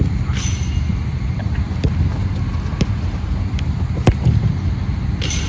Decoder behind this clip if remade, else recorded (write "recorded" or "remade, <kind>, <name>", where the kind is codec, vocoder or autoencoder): recorded